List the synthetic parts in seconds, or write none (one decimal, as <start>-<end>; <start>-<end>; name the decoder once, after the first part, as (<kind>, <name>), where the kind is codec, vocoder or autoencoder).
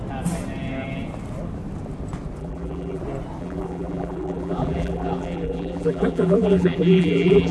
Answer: 2.4-3.0 (vocoder, BigVGAN v2); 3.4-7.5